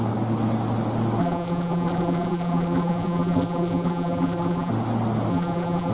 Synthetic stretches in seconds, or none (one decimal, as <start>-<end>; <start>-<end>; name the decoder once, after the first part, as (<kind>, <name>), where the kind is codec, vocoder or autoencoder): 1.2-4.7 (vocoder, BigVGAN v2); 5.3-5.9